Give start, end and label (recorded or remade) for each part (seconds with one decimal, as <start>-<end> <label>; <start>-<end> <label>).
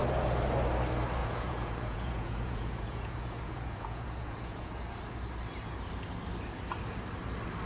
0.0-1.2 recorded; 1.2-4.8 remade; 4.8-7.7 recorded